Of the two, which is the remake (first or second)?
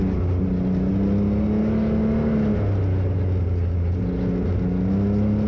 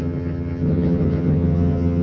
second